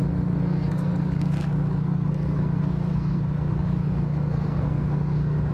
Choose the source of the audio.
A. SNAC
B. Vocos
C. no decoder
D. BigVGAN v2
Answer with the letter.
A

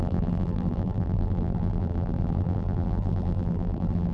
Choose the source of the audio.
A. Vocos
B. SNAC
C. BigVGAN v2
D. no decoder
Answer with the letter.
C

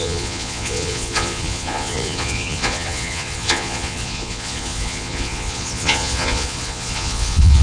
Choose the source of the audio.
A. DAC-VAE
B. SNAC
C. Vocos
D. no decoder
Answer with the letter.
C